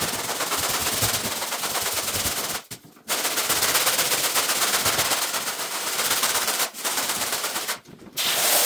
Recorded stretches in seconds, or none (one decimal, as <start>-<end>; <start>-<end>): 0.0-6.2; 8.2-8.7